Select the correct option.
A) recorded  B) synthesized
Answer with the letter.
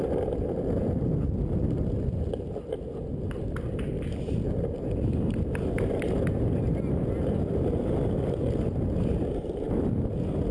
A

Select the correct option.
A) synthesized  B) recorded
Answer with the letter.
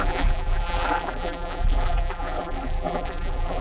A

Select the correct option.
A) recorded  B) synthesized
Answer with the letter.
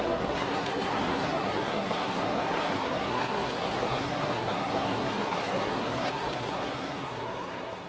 B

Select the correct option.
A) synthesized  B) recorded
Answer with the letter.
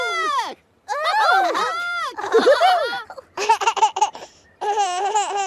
A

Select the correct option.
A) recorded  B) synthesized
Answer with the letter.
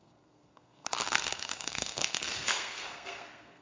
B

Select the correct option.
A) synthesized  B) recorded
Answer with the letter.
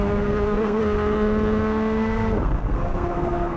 A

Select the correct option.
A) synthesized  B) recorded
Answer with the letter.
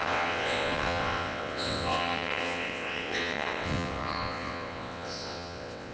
A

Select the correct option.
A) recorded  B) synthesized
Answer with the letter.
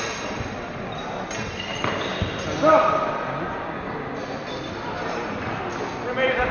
A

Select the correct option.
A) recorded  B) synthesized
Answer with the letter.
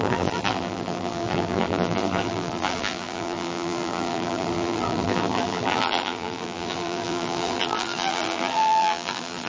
B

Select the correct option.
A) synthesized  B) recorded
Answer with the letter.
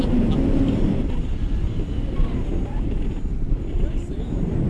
B